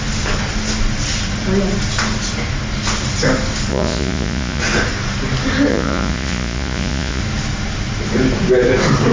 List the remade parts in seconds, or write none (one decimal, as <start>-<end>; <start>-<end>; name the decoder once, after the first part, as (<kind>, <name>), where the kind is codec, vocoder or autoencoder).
3.7-4.6 (vocoder, Vocos); 5.7-7.2